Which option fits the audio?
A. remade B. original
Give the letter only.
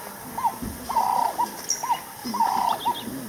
B